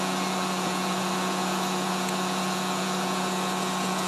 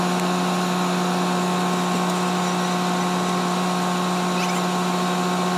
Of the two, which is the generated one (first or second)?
first